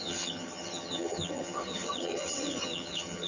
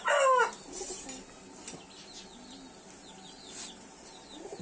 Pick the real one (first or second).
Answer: second